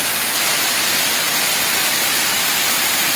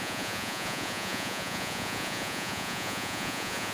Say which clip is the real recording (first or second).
first